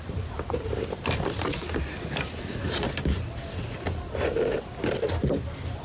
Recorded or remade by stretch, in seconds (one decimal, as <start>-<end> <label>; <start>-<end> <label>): 0.0-1.6 remade; 1.6-5.1 recorded; 5.1-5.8 remade